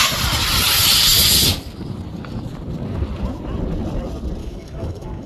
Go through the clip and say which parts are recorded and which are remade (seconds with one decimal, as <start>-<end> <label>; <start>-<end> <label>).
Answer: 0.0-4.4 recorded; 4.4-5.3 remade